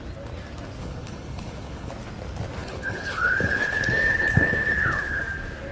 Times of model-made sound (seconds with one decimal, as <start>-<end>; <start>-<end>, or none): 0.8-1.9; 2.6-5.2